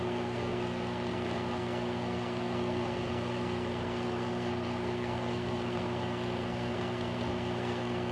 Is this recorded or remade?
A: remade